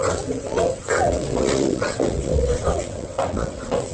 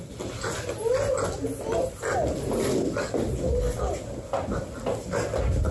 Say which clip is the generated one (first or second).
first